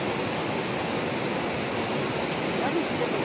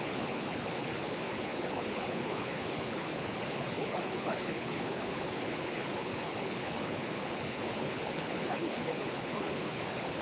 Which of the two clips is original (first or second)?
first